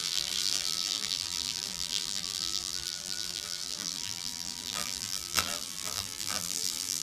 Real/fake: fake